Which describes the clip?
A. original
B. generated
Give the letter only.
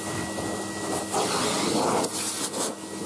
A